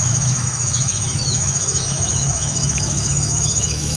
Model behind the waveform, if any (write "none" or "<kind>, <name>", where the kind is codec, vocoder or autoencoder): autoencoder, DAC-VAE